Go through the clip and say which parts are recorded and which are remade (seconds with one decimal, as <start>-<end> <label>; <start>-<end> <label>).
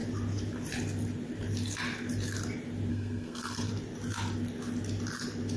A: 0.0-2.9 recorded; 2.9-3.7 remade; 3.7-5.6 recorded